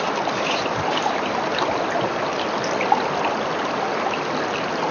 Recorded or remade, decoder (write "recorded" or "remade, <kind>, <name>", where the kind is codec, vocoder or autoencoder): recorded